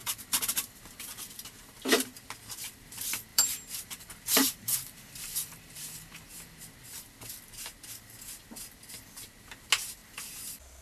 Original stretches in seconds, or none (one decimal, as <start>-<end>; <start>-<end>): 2.3-3.3; 6.5-10.8